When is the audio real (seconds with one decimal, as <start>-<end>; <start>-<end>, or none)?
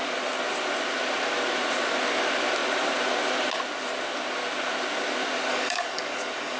0.0-5.5